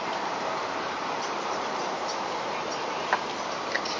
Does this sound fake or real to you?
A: real